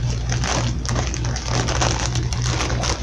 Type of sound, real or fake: real